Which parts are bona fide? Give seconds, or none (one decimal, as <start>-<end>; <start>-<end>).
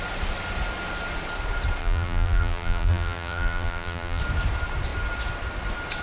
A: 0.0-1.8; 4.2-6.0